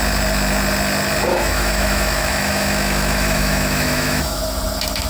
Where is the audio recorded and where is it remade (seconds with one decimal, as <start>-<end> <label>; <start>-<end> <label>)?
0.0-1.3 recorded; 1.3-4.4 remade; 4.4-5.1 recorded